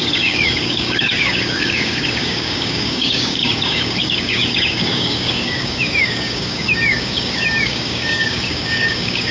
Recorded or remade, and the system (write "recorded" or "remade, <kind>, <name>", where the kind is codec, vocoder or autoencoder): remade, codec, DAC